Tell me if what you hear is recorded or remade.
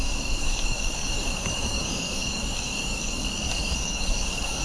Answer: remade